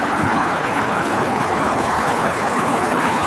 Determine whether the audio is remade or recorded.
remade